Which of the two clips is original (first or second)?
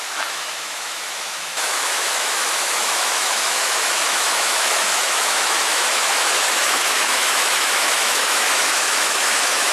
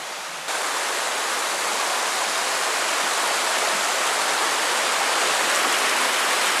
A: second